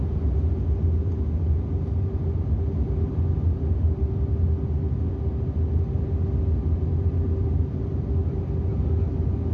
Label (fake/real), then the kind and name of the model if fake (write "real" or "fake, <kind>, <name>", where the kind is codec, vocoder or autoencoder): real